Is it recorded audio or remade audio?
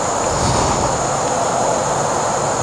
recorded